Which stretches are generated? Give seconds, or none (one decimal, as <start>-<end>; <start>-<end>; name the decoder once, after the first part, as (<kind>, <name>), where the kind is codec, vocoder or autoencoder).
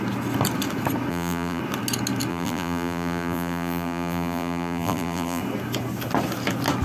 1.1-1.6 (vocoder, BigVGAN v2); 2.3-5.4